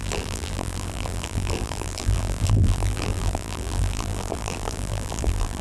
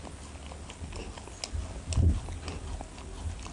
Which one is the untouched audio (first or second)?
second